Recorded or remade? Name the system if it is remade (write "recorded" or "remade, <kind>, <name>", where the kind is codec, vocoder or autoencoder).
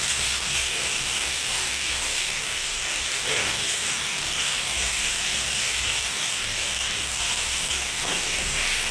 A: remade, codec, DAC